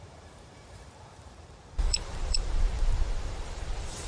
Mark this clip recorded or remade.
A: remade